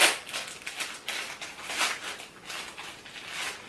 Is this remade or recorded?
recorded